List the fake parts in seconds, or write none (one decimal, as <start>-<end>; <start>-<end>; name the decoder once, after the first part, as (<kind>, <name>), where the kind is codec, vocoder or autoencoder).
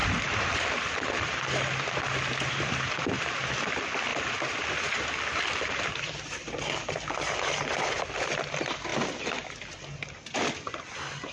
0.0-4.1 (vocoder, BigVGAN v2); 5.2-11.3